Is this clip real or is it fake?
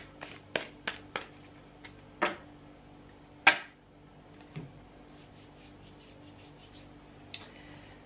real